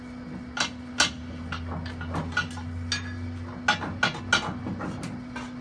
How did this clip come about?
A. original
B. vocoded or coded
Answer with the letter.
A